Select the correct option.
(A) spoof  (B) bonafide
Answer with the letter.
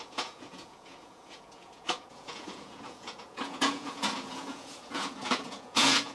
A